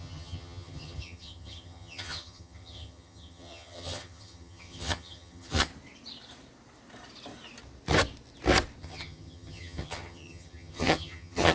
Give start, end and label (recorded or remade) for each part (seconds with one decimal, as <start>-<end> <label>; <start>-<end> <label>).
0.0-5.7 remade; 5.7-8.8 recorded; 8.8-11.5 remade